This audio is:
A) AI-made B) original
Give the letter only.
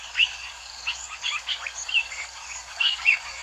A